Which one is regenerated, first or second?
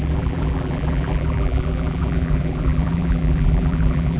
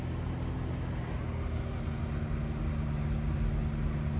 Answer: first